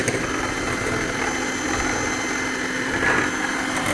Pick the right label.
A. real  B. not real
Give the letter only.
A